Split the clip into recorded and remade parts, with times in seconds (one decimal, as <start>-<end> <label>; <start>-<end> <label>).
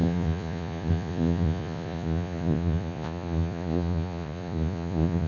0.0-5.3 remade